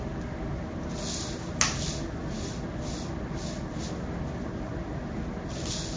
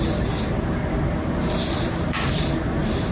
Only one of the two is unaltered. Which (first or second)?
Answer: first